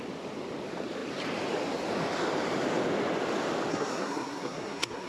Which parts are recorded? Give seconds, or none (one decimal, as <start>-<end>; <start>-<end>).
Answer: 0.0-3.7